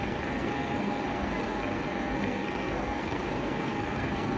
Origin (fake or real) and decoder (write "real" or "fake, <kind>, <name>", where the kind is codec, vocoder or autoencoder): fake, codec, SNAC